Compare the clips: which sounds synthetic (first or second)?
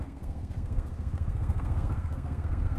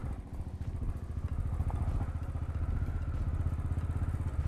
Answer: first